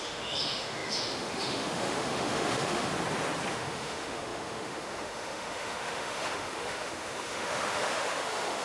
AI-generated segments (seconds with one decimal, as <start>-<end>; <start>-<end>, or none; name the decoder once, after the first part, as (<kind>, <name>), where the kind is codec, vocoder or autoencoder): 0.0-2.9 (autoencoder, DAC-VAE); 3.5-8.6